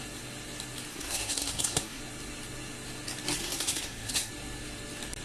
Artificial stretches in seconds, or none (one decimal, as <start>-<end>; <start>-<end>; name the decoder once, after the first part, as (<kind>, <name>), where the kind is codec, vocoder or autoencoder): 0.9-2.0 (codec, SNAC); 3.4-4.3